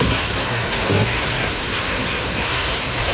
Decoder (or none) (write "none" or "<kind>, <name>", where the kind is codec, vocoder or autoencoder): codec, SNAC